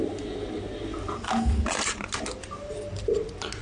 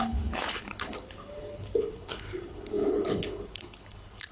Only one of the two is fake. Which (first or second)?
second